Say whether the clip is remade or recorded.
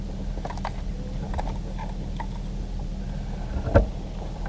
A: recorded